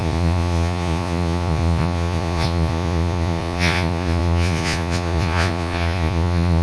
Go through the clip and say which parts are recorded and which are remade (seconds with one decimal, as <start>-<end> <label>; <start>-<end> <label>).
0.0-6.6 remade